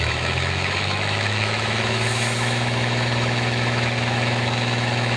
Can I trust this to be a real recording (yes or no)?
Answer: no